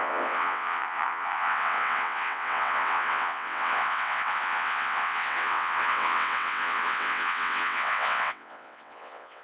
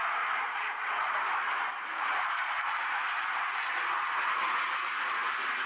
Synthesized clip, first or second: first